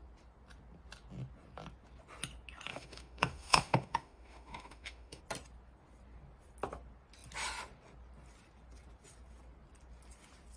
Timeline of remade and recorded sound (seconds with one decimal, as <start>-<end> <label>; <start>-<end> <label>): 0.0-2.7 recorded; 2.7-5.2 remade; 5.2-10.6 recorded